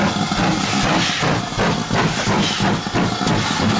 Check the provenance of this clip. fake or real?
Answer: real